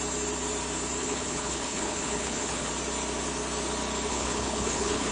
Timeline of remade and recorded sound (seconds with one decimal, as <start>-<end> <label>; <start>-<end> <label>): 0.0-1.0 recorded; 1.0-2.7 remade; 2.7-4.1 recorded; 4.1-5.1 remade

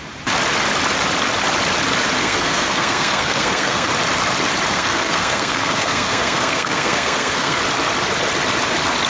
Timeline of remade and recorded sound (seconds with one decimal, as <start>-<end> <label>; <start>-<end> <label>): 0.0-2.2 recorded; 2.2-3.9 remade; 3.9-4.7 recorded; 4.7-7.6 remade; 7.6-9.1 recorded